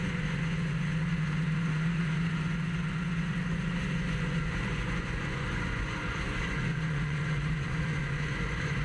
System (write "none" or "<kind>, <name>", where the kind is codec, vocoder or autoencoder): vocoder, Vocos